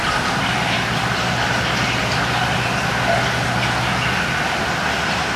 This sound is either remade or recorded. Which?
recorded